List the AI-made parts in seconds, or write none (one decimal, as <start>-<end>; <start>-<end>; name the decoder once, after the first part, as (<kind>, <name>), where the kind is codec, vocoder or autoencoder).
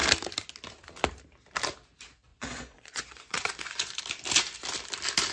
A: 2.3-4.0 (vocoder, Vocos)